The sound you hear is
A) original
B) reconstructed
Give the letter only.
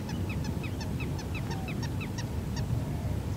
A